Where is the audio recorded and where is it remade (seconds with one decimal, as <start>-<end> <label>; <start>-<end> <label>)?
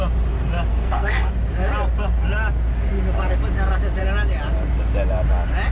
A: 0.0-0.7 recorded; 0.7-1.3 remade; 1.3-5.7 recorded